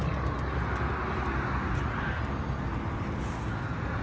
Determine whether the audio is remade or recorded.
recorded